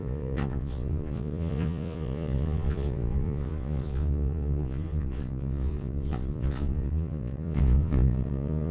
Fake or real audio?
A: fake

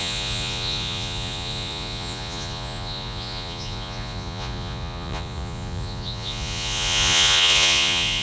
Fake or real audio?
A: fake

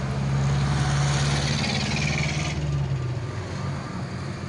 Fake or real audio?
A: real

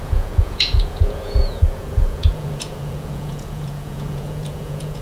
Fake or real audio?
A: fake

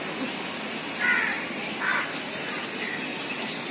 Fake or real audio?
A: real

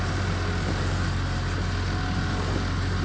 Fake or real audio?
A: real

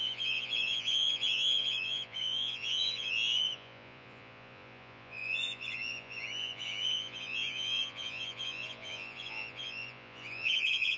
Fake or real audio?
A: fake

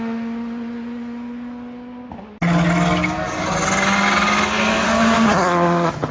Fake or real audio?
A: real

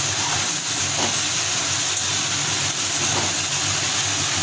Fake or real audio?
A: real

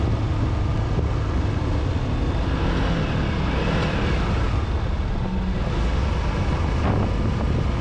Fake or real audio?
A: real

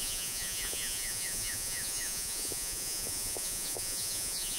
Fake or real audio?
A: fake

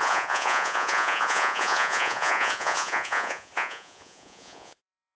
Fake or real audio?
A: fake